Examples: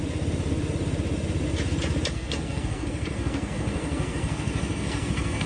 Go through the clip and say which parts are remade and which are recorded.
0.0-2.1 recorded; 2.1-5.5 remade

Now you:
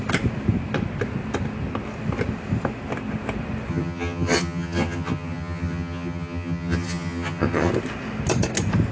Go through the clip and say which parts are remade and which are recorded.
0.0-3.7 recorded; 3.7-7.7 remade; 7.7-8.9 recorded